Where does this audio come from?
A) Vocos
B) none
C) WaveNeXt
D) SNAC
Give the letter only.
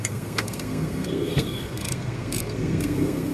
D